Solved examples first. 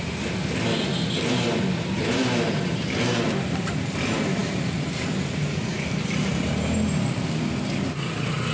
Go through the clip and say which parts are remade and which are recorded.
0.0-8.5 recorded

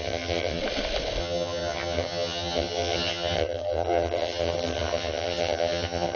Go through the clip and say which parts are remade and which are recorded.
0.0-0.6 remade; 0.6-1.2 recorded; 1.2-6.2 remade

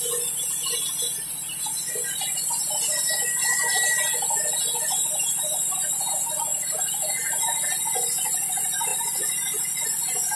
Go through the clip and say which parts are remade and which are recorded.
0.0-10.4 recorded

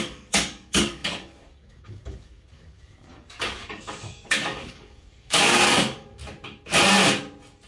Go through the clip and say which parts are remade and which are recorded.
0.0-6.2 remade; 6.2-7.7 recorded